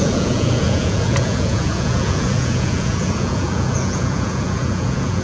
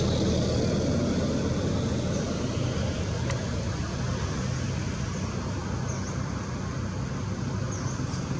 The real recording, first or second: second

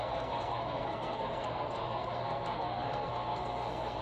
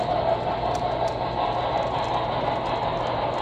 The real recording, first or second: second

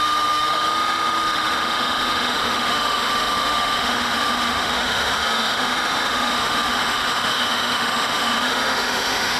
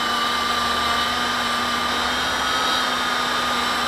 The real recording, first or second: second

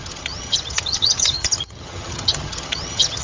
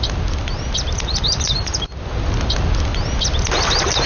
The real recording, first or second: second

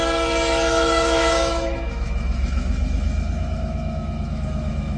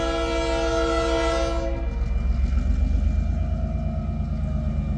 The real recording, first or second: second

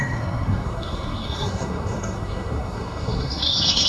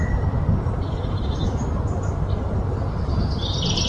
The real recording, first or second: second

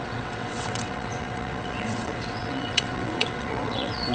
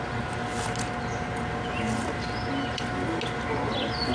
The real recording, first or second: second